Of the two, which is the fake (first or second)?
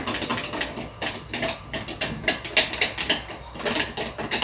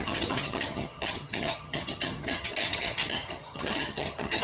second